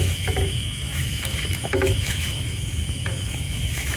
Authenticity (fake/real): fake